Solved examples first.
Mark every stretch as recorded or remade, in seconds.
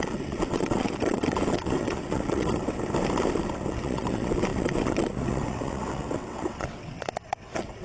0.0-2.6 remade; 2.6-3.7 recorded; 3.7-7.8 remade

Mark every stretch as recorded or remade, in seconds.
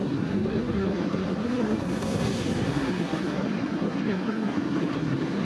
0.0-5.4 remade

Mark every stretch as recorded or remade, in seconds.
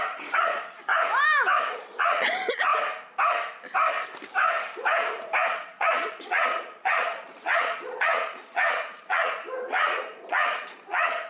0.0-0.9 remade; 0.9-1.7 recorded; 1.7-2.7 remade; 2.7-5.5 recorded; 5.5-11.3 remade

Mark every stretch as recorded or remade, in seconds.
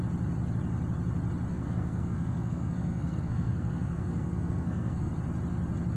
0.0-1.5 recorded; 1.5-5.1 remade; 5.1-6.0 recorded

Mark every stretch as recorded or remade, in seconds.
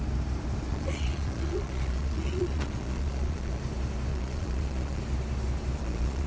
0.0-0.7 recorded; 0.7-3.6 remade; 3.6-4.1 recorded; 4.1-5.0 remade; 5.0-5.8 recorded; 5.8-6.3 remade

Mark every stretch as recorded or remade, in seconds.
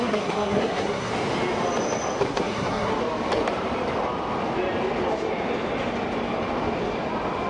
0.0-1.1 remade; 1.1-2.2 recorded; 2.2-2.9 remade; 2.9-7.5 recorded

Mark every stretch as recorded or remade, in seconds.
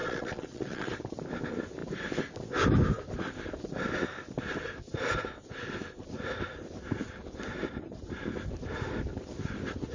0.0-0.9 remade; 0.9-9.9 recorded